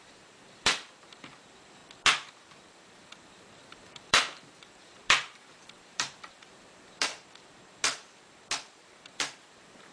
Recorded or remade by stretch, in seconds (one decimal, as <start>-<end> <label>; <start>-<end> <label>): 0.0-1.8 remade; 1.8-2.3 recorded; 2.3-7.1 remade; 7.1-9.0 recorded; 9.0-9.9 remade